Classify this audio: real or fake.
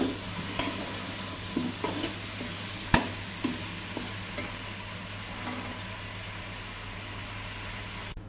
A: real